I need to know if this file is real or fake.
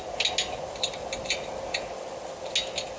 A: real